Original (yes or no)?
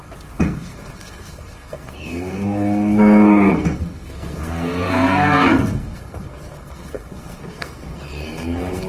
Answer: no